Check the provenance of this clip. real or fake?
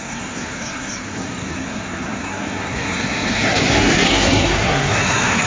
fake